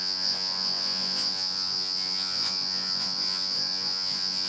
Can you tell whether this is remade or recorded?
remade